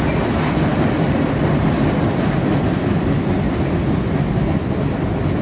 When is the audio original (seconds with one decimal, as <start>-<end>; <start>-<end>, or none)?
0.0-5.4